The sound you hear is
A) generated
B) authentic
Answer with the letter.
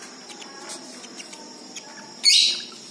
A